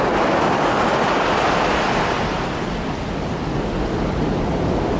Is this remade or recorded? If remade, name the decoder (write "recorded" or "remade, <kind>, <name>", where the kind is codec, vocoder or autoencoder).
recorded